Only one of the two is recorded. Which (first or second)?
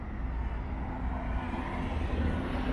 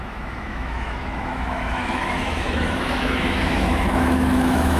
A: first